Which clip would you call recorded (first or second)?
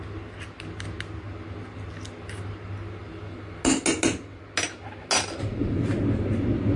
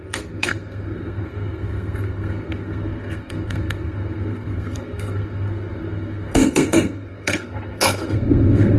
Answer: first